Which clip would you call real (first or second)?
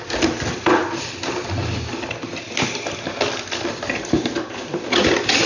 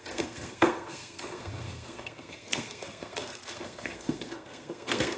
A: first